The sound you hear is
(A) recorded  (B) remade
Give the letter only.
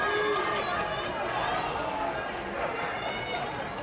A